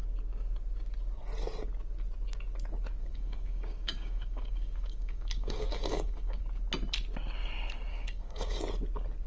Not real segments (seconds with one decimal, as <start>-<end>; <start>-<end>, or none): 3.0-6.4; 7.9-8.6